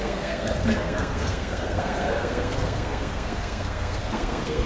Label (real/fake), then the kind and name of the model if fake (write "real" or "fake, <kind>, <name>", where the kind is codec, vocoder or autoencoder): fake, codec, SNAC